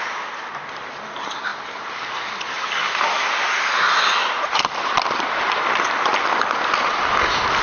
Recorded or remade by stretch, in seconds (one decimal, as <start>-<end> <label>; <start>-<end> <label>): 0.0-7.6 recorded